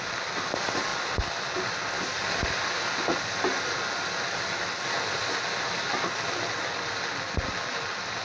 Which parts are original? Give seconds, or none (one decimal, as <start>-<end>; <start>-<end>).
0.0-8.2